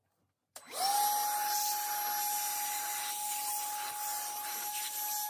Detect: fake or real real